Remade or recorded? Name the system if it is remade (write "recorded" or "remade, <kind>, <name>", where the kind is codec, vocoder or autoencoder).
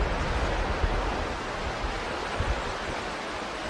recorded